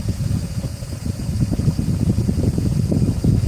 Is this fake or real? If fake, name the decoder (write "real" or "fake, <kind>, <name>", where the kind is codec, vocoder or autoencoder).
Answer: fake, vocoder, Vocos